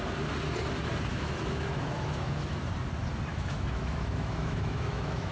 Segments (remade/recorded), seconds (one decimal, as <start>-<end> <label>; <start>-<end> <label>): 0.0-1.1 recorded; 1.1-2.6 remade; 2.6-3.3 recorded; 3.3-5.3 remade

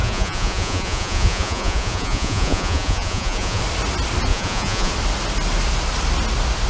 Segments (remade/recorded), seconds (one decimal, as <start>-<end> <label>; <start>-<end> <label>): 0.0-3.6 remade; 3.6-4.3 recorded; 4.3-4.9 remade; 4.9-6.7 recorded

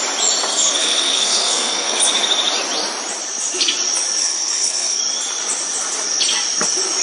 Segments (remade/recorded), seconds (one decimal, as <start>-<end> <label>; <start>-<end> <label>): 0.0-0.5 recorded; 0.5-2.0 remade; 2.0-4.2 recorded; 4.2-5.0 remade; 5.0-7.0 recorded